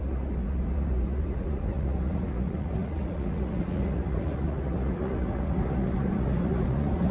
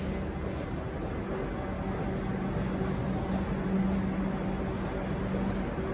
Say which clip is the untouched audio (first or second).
second